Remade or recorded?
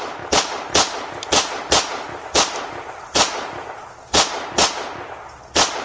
recorded